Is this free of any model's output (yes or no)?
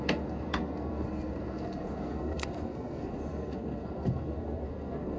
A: no